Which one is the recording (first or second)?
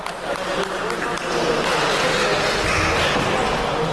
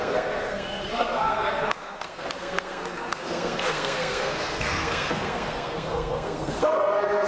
first